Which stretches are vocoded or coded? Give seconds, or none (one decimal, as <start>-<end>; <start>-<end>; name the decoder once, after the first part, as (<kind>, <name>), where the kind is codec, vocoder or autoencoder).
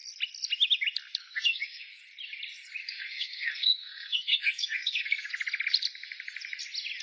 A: 1.2-2.0 (codec, SNAC); 2.8-5.3